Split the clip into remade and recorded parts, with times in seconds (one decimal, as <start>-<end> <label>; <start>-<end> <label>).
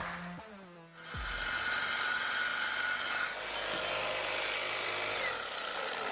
0.0-6.1 recorded